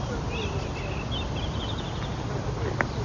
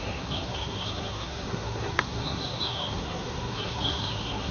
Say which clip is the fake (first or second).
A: second